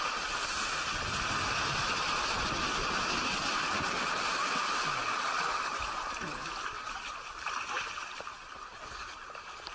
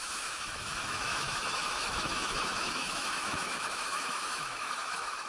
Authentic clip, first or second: first